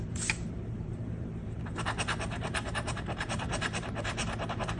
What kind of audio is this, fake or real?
fake